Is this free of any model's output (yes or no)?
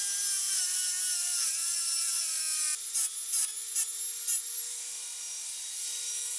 yes